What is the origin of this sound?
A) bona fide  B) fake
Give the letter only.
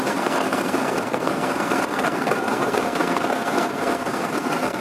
B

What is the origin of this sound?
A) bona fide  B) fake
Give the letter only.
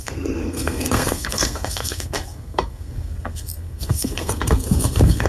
B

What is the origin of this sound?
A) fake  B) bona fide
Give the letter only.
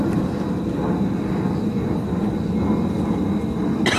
B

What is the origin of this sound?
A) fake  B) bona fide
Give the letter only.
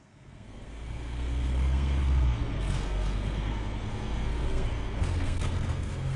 A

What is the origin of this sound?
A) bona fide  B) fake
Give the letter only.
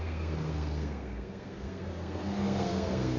B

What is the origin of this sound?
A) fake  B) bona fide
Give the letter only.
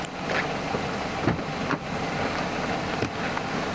B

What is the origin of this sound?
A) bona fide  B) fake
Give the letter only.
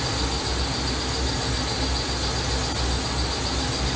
A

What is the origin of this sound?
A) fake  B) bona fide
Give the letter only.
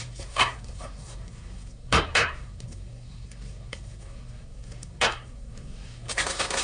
A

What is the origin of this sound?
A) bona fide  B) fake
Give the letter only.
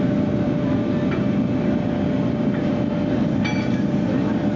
A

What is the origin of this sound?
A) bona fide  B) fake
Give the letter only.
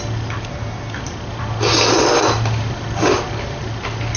A